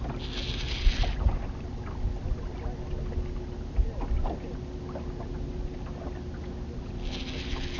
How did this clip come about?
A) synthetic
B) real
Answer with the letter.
B